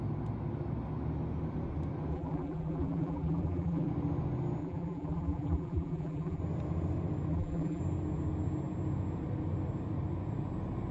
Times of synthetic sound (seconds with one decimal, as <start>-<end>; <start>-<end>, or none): 2.1-3.9; 4.6-6.4; 7.3-7.8